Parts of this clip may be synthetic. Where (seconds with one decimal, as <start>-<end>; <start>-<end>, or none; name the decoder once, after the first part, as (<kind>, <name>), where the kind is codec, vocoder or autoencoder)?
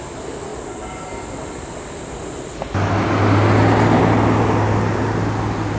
none